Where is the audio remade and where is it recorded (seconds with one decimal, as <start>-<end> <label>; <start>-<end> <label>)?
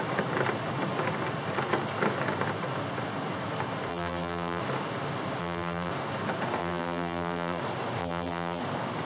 0.0-3.9 recorded; 3.9-4.6 remade; 4.6-5.4 recorded; 5.4-5.9 remade; 5.9-6.6 recorded; 6.6-7.6 remade; 7.6-8.0 recorded; 8.0-8.6 remade; 8.6-9.0 recorded